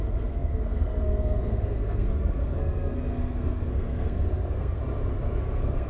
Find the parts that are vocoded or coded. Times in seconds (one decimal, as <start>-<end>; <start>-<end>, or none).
0.0-4.8; 5.4-5.9